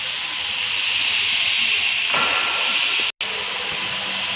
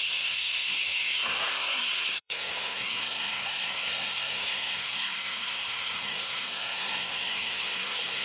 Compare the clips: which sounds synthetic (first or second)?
second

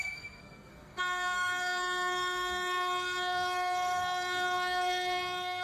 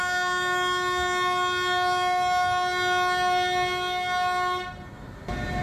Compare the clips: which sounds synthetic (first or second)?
first